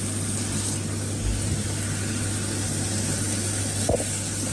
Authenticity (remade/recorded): recorded